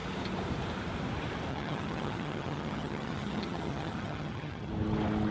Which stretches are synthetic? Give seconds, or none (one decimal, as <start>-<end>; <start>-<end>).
1.5-4.7